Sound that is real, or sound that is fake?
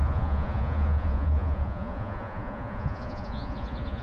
fake